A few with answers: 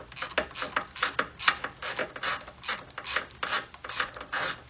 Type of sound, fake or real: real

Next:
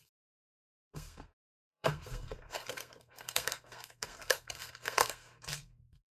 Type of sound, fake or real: fake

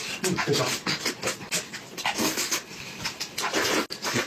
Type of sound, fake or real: real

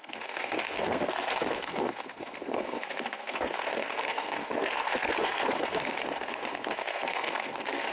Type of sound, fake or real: fake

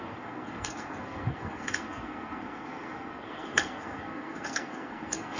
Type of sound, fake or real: fake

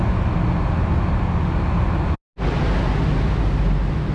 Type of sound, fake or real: real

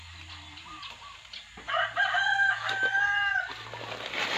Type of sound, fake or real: fake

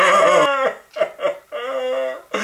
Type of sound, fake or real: real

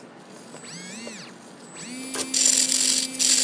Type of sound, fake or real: real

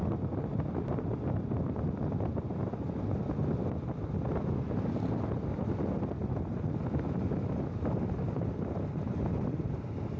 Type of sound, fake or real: real